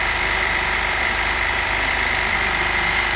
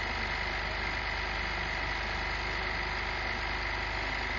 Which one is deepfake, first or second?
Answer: first